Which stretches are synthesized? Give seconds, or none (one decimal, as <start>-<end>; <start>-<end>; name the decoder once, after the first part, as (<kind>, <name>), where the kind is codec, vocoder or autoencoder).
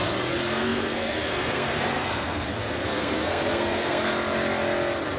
0.0-4.1 (codec, SNAC)